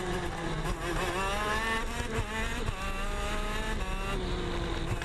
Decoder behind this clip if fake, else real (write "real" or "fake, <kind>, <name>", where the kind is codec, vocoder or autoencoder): real